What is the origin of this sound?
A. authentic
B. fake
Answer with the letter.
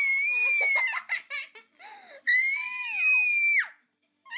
A